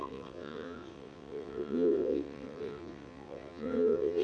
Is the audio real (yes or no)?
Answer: no